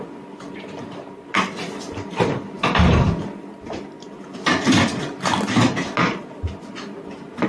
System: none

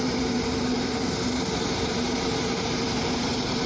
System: vocoder, BigVGAN v2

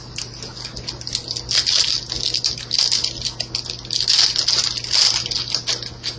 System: none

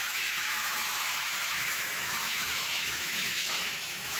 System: autoencoder, DAC-VAE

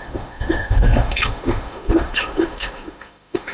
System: autoencoder, DAC-VAE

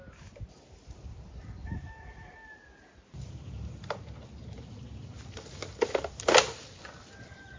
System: none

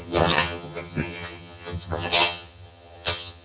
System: vocoder, HiFi-GAN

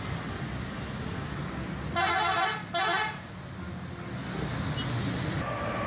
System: none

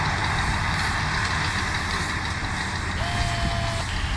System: none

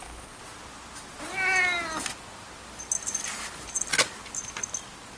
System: none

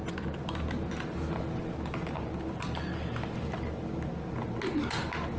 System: none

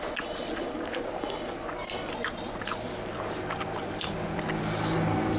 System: none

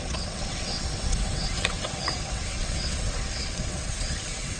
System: vocoder, WaveNeXt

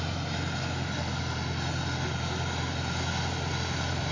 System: none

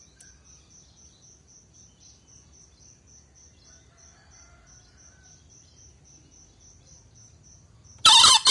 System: none